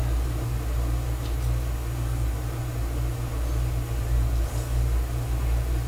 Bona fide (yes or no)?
yes